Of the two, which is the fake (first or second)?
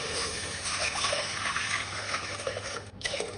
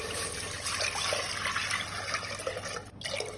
first